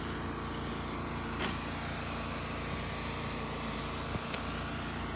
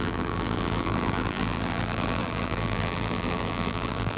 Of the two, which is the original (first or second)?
first